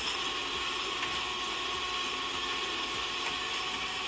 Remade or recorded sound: recorded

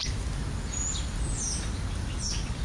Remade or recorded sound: recorded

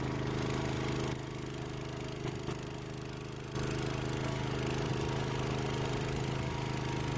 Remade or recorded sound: recorded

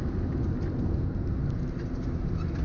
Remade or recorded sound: recorded